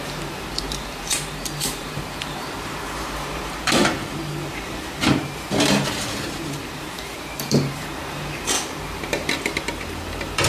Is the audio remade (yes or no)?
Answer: yes